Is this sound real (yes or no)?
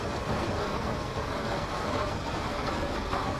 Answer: no